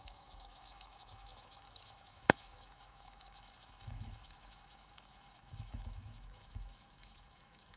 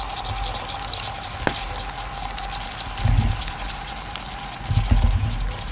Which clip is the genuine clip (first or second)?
second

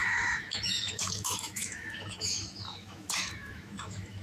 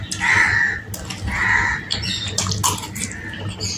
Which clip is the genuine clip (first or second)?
second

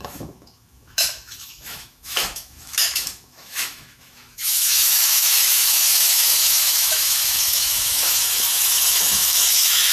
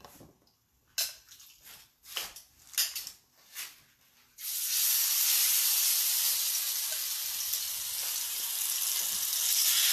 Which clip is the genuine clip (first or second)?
second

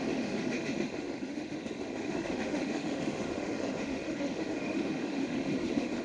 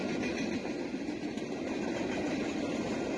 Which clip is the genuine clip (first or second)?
second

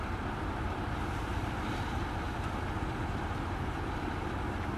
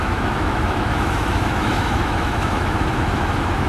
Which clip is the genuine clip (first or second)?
first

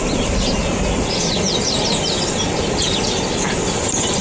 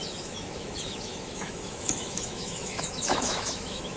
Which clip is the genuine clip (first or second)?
first